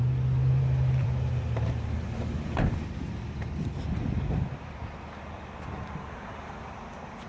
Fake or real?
fake